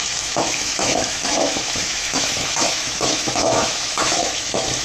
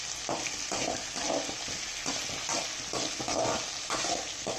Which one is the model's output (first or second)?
first